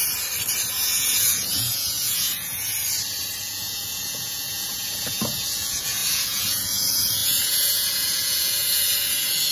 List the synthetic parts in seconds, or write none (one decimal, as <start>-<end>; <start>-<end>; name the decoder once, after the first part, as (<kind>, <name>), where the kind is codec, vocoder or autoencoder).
0.7-2.7 (vocoder, Vocos); 3.4-9.5